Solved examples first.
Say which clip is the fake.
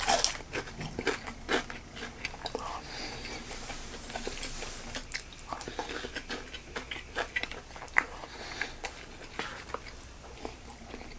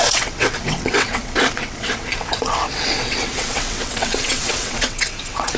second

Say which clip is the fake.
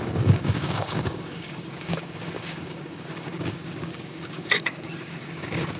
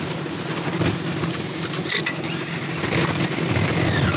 first